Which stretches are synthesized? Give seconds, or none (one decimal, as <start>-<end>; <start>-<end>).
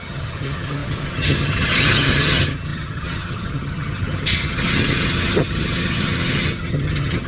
0.0-7.3